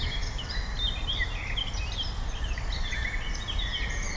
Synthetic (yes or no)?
no